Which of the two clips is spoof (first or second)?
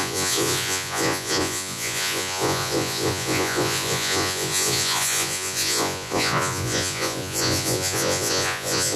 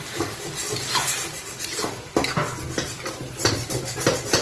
first